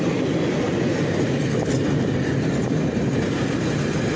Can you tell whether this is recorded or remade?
recorded